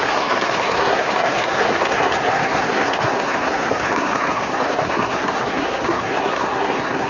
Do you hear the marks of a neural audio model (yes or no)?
yes